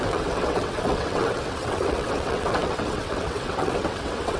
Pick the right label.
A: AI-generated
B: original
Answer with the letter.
A